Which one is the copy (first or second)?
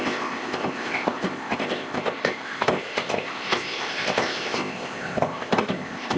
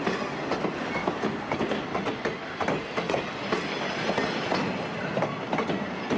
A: first